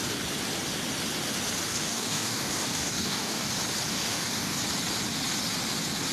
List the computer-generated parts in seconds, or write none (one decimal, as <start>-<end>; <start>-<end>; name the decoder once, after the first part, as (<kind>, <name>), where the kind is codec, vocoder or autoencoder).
1.7-3.5 (codec, DAC); 3.9-4.6